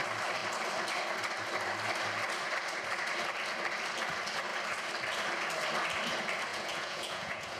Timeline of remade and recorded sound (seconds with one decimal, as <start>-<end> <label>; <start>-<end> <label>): 0.0-6.5 recorded; 6.5-7.6 remade